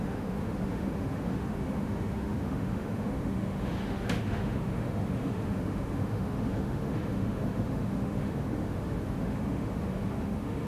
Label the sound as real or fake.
fake